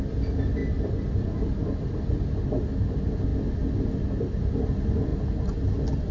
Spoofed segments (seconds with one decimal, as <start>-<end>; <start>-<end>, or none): none